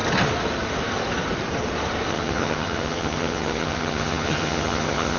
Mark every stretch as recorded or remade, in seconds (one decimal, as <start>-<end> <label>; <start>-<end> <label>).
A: 0.0-2.1 recorded; 2.1-5.2 remade